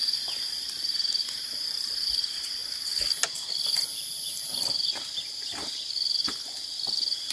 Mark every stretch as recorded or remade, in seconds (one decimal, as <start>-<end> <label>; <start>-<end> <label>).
0.0-2.1 remade; 2.1-7.3 recorded